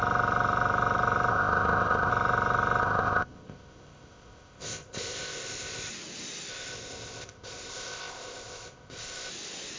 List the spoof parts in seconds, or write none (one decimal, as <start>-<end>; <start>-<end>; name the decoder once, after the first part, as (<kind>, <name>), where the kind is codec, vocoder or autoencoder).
1.3-2.1 (codec, ZipCodec); 2.8-5.9; 6.5-9.3